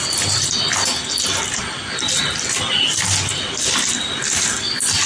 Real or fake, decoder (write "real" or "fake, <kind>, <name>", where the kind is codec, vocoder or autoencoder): real